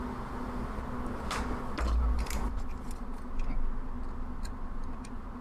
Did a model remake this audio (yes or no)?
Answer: no